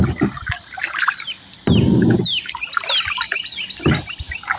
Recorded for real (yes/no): yes